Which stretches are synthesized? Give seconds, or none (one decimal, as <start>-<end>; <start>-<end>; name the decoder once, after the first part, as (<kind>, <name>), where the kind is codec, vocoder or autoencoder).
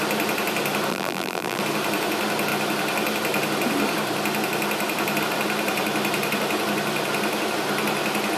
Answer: 0.9-1.6 (vocoder, BigVGAN v2)